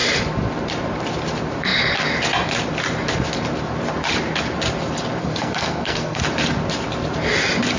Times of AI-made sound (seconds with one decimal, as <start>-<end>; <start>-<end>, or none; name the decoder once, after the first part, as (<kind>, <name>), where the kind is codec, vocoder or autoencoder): 5.2-6.2 (codec, SNAC)